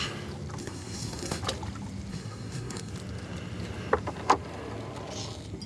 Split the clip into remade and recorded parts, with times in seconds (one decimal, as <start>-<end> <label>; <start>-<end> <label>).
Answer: 0.0-0.6 recorded; 0.6-1.4 remade; 1.4-2.1 recorded; 2.1-2.9 remade; 2.9-5.7 recorded